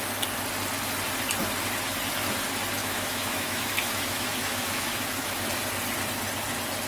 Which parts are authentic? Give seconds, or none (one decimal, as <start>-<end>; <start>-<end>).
0.0-2.8; 5.5-6.9